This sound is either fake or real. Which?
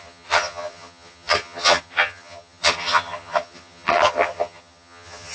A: fake